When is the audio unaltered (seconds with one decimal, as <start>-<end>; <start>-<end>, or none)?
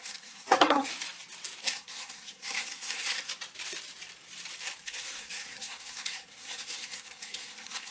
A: 0.9-1.6; 3.3-4.8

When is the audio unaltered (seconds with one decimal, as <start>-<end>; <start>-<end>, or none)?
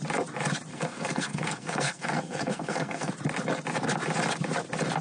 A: 0.0-0.7; 3.1-5.0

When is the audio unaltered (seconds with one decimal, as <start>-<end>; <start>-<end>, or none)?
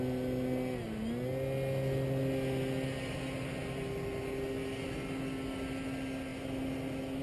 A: 0.0-7.2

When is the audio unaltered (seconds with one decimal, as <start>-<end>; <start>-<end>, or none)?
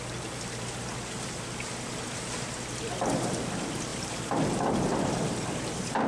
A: 0.0-6.1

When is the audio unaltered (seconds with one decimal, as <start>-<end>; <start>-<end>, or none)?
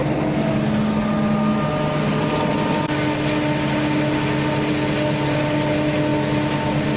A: 0.0-7.0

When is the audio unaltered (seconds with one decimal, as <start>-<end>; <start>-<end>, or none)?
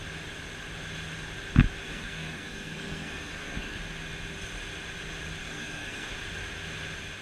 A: 0.0-1.8; 3.8-5.4; 6.1-7.2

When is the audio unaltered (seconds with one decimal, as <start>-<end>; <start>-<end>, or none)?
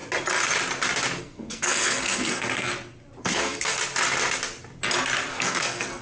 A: 0.0-1.2; 2.7-3.2; 3.8-5.3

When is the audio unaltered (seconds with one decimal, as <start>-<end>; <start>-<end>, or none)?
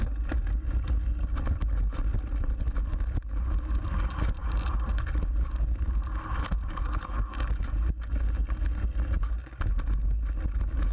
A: 0.0-10.9